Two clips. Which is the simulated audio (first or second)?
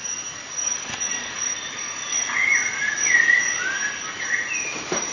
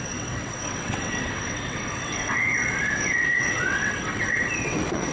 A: second